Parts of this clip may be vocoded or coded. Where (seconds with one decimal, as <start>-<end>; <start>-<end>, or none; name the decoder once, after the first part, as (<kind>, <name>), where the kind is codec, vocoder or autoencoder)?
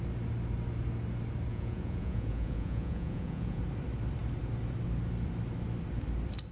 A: 1.5-3.6 (vocoder, Vocos)